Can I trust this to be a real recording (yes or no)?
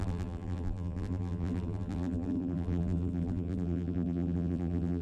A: no